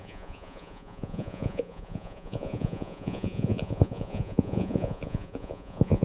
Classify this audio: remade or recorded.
remade